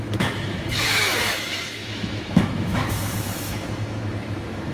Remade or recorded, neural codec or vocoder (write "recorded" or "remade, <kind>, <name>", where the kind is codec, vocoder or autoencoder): remade, autoencoder, DAC-VAE